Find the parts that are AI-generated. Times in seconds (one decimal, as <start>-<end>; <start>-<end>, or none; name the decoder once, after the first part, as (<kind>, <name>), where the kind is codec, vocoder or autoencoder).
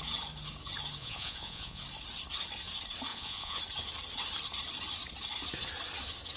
1.0-1.8 (vocoder, Vocos); 3.1-3.6